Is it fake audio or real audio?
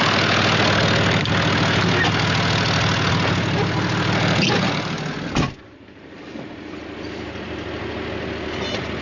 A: real